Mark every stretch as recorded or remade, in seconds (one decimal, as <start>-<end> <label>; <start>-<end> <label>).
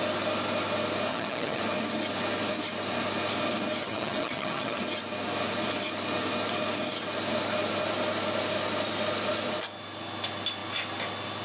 0.0-1.1 recorded; 1.1-1.6 remade; 1.6-3.8 recorded; 3.8-4.8 remade; 4.8-11.4 recorded